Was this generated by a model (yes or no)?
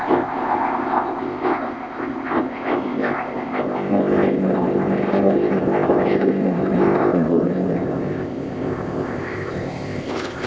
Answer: yes